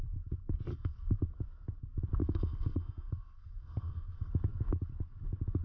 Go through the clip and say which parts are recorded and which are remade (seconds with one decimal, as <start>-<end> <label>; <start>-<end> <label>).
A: 0.0-0.7 recorded; 0.7-1.2 remade; 1.2-2.2 recorded; 2.2-4.3 remade; 4.3-5.6 recorded